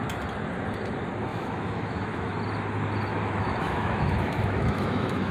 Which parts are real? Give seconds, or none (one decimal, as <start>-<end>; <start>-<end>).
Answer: 0.0-1.3; 2.3-3.1